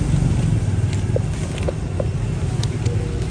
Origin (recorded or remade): recorded